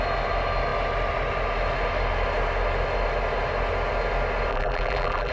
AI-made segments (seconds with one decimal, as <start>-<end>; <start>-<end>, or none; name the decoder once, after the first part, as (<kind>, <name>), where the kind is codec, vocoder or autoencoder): 4.5-5.3 (vocoder, BigVGAN v2)